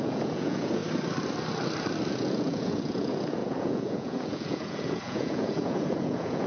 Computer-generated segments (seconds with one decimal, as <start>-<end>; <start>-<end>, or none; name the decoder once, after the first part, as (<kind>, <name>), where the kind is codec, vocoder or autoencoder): 0.0-0.8 (vocoder, Vocos); 2.1-6.5